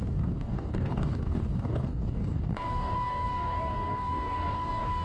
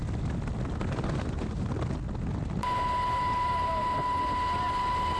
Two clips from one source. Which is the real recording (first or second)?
second